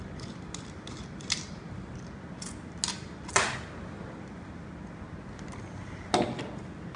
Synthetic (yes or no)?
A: no